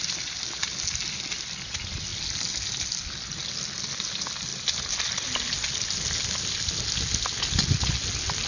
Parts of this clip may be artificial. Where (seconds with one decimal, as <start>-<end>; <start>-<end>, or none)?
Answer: none